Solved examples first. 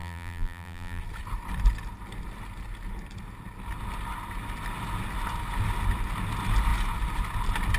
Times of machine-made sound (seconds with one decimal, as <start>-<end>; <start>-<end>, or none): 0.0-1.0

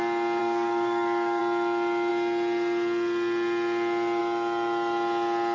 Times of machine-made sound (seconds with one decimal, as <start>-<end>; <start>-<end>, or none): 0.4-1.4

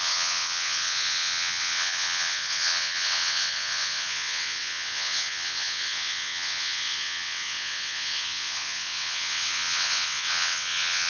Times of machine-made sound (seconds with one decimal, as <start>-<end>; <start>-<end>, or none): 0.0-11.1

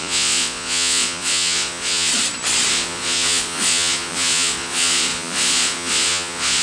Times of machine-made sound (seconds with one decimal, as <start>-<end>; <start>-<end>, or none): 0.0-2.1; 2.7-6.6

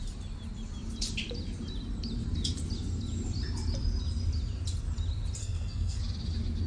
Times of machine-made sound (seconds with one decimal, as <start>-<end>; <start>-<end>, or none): 5.4-6.0

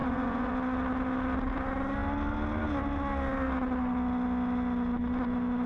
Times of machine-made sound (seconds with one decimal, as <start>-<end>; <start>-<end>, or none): 0.0-0.5